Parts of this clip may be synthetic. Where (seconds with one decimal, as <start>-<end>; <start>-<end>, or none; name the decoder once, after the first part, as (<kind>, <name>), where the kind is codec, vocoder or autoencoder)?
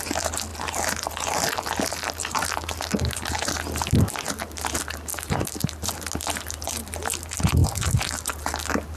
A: 5.1-5.9 (vocoder, BigVGAN v2)